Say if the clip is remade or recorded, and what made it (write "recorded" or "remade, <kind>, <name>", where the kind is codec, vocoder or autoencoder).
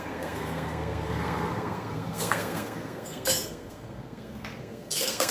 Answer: remade, codec, SNAC